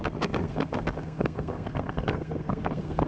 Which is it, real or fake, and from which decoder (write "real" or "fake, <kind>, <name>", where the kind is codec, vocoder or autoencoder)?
fake, codec, SNAC